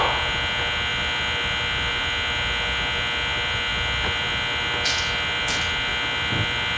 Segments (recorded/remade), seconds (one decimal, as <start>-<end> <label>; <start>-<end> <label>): 0.0-6.8 recorded

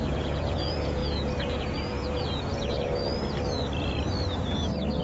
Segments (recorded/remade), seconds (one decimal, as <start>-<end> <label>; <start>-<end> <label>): 0.0-3.1 remade; 3.1-5.0 recorded

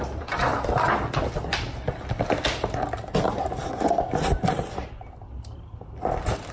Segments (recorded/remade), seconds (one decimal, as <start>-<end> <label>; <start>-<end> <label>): 0.0-6.5 recorded

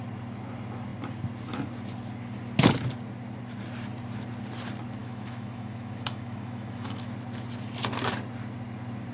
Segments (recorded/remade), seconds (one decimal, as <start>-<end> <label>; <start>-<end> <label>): 0.0-5.0 recorded; 5.0-7.1 remade; 7.1-9.1 recorded

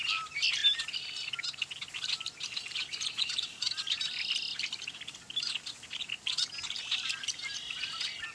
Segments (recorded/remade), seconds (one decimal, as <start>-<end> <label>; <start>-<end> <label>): 0.0-8.3 recorded